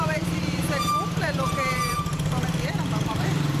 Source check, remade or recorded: remade